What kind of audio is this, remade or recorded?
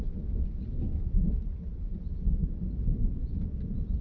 recorded